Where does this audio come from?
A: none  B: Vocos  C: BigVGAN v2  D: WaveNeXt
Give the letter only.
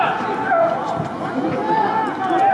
A